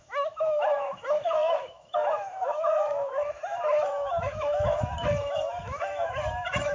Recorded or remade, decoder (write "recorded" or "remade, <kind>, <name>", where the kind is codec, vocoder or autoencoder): remade, autoencoder, DAC-VAE